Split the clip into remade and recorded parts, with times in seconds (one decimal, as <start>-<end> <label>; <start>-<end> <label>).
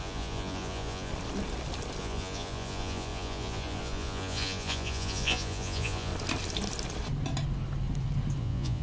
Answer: 0.0-1.1 remade; 1.1-2.0 recorded; 2.0-6.1 remade; 6.1-8.4 recorded; 8.4-8.8 remade